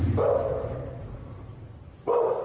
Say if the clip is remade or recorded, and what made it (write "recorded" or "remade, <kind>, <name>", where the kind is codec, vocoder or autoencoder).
recorded